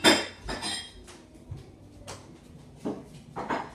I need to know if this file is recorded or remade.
recorded